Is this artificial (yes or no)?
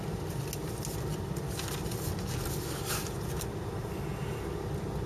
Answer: no